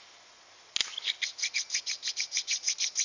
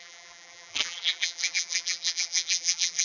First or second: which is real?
first